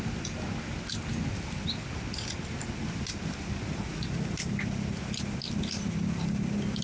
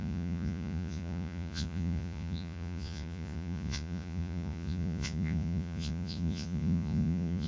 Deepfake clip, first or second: second